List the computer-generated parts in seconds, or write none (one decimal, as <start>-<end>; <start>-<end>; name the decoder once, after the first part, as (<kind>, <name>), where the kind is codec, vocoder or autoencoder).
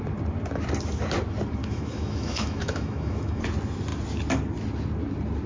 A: 1.6-3.4 (autoencoder, DAC-VAE)